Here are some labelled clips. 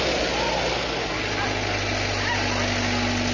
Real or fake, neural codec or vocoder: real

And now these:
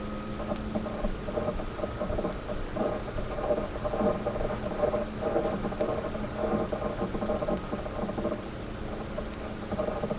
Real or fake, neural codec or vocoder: real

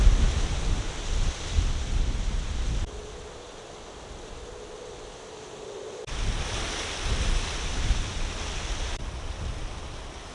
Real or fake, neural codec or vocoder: real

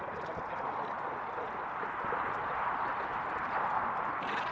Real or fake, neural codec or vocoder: real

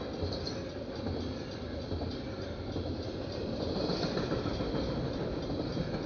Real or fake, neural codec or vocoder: real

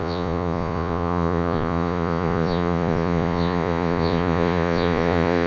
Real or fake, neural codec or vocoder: fake, vocoder, Vocos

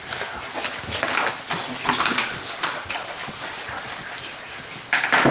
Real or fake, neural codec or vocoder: real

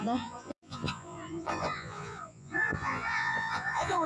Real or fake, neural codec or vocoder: fake, vocoder, Vocos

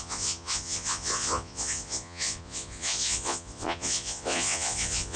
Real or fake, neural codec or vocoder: fake, vocoder, Vocos